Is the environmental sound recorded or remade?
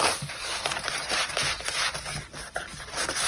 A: recorded